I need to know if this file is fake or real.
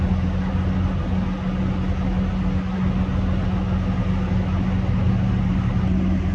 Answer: real